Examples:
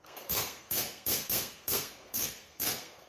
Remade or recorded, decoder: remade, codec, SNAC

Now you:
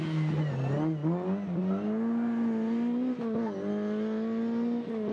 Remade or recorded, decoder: recorded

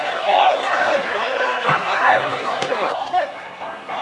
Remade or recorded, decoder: remade, codec, SNAC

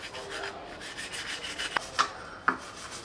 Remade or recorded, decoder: recorded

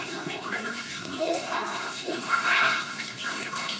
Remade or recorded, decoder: remade, codec, SNAC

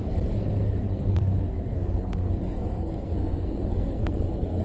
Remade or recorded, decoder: remade, codec, SNAC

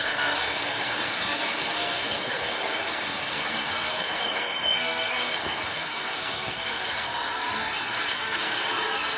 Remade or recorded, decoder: remade, codec, SNAC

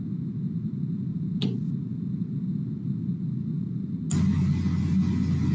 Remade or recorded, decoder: recorded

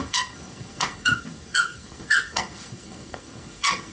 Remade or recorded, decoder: remade, codec, SNAC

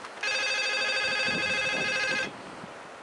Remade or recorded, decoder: recorded